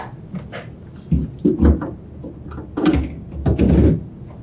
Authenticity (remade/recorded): recorded